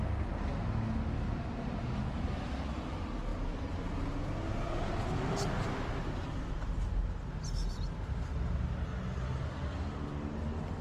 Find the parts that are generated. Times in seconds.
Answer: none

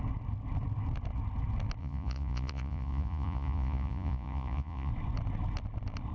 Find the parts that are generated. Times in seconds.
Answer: 1.8-4.9 (vocoder, Vocos)

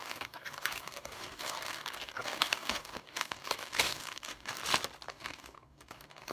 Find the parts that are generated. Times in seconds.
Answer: 0.0-4.6 (codec, DAC); 5.1-6.3

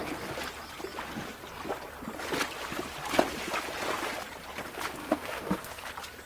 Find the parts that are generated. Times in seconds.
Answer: 5.0-5.8 (codec, SNAC)

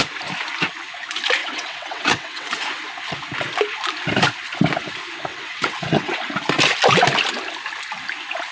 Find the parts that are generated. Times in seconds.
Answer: 1.4-2.5 (vocoder, WaveNeXt); 5.3-6.2